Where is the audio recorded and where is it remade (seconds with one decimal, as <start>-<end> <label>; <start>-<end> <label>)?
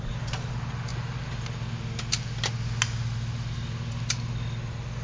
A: 0.0-5.0 recorded